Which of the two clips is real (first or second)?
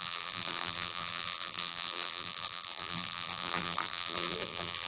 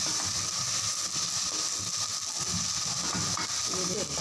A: second